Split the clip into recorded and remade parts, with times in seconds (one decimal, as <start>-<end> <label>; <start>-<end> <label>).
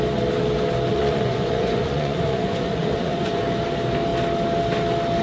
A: 0.0-0.9 recorded; 0.9-3.4 remade; 3.4-5.2 recorded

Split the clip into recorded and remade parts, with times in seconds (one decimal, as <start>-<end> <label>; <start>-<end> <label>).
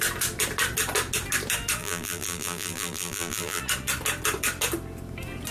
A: 0.0-1.8 recorded; 1.8-3.6 remade; 3.6-5.5 recorded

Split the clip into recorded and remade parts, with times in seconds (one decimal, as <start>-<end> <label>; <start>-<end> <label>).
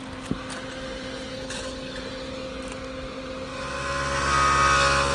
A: 0.0-1.3 recorded; 1.3-2.0 remade; 2.0-5.1 recorded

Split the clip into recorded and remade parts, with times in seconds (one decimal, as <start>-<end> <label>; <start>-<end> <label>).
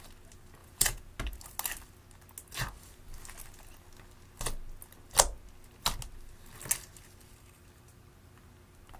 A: 0.0-0.6 recorded; 0.6-1.1 remade; 1.1-9.0 recorded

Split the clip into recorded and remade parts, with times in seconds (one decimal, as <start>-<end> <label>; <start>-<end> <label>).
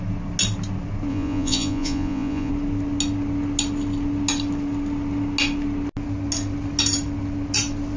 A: 0.0-1.1 recorded; 1.1-2.5 remade; 2.5-8.0 recorded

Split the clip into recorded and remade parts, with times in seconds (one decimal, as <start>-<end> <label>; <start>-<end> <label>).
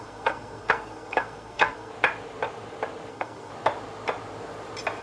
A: 0.0-1.9 remade; 1.9-3.1 recorded; 3.1-3.5 remade; 3.5-5.0 recorded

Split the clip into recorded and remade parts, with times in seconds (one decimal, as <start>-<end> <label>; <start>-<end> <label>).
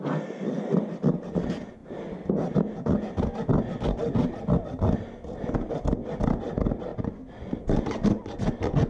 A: 0.0-8.9 recorded